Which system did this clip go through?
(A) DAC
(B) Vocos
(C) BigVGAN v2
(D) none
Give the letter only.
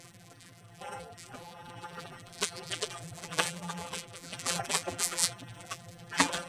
C